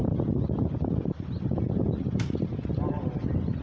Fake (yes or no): no